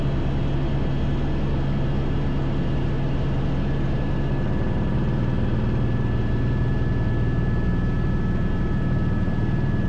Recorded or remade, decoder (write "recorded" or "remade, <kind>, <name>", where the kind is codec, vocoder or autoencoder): recorded